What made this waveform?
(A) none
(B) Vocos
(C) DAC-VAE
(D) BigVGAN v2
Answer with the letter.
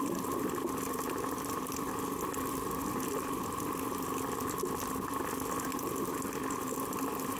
A